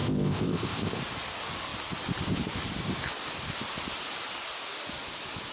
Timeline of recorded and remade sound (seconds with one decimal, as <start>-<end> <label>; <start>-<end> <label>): 0.0-1.0 remade; 1.0-5.5 recorded